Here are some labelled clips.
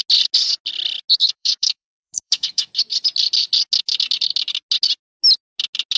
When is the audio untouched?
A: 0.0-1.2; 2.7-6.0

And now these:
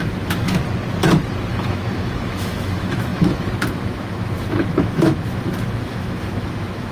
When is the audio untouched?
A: 0.6-1.5

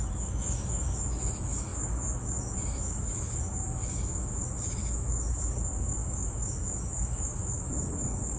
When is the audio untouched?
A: none